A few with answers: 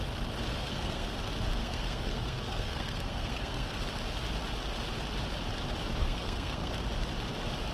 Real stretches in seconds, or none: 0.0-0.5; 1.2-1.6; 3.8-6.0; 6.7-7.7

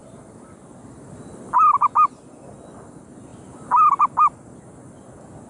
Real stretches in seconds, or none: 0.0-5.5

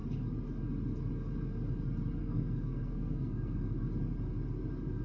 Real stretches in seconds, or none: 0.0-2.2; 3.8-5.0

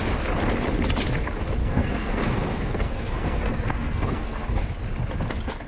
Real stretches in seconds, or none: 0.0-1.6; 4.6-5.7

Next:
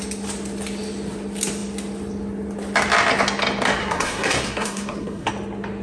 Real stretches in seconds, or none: 0.0-3.8; 5.3-5.8

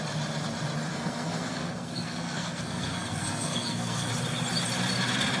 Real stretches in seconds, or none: 0.0-0.9; 4.1-5.4